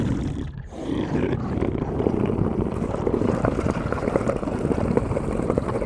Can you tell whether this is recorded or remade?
recorded